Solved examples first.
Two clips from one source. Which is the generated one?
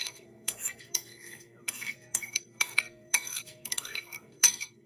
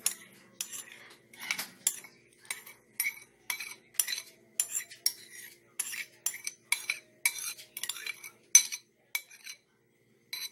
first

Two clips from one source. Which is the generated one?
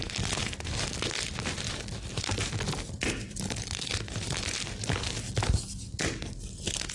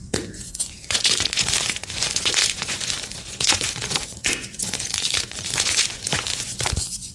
second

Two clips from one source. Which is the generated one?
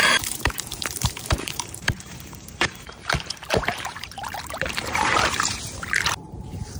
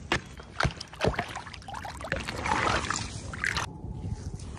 first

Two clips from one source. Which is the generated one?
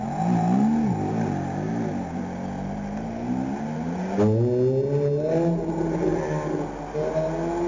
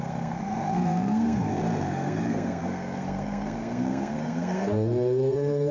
second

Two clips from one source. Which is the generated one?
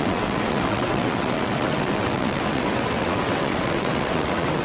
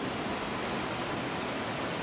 first